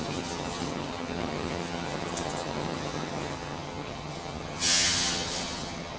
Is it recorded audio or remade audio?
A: remade